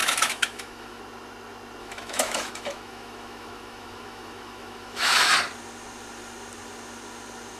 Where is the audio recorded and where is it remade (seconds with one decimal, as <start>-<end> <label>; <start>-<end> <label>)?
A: 0.0-1.0 remade; 1.0-1.8 recorded; 1.8-5.3 remade; 5.3-7.6 recorded